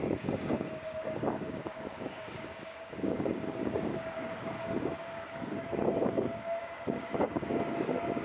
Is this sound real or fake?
fake